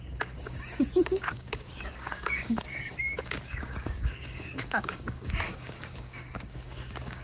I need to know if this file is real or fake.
fake